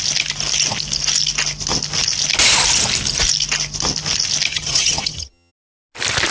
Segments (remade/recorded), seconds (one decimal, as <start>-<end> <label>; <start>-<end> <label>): 0.0-4.5 recorded; 4.5-5.5 remade; 5.5-6.3 recorded